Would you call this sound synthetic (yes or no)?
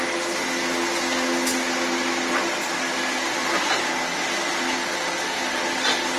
no